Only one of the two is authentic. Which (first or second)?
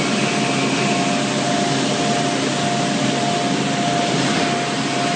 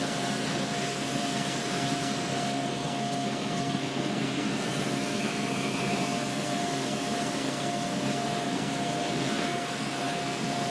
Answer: first